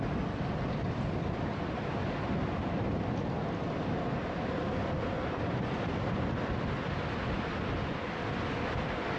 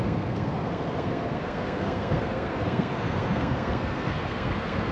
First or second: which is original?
first